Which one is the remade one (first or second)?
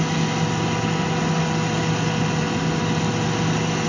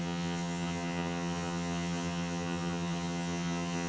second